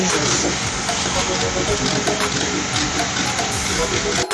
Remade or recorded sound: recorded